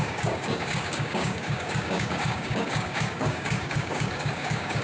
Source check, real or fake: fake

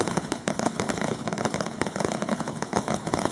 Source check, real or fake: fake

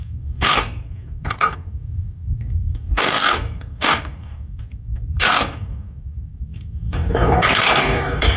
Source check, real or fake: fake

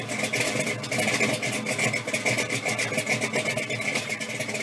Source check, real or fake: real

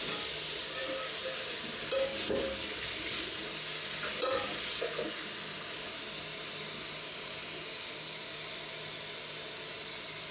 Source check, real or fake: real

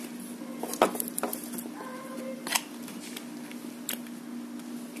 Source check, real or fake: real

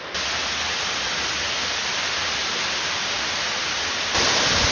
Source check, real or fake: real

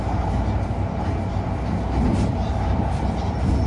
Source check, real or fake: real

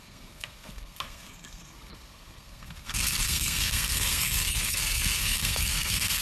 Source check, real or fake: fake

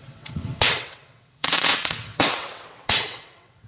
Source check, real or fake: fake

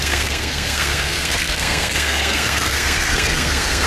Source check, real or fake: fake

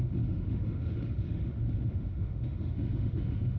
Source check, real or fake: fake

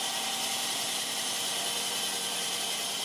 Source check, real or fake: fake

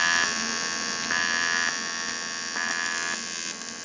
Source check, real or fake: real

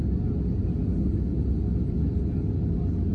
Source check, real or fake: real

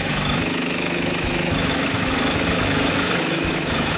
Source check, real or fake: fake